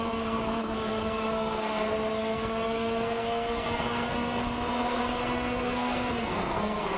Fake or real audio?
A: fake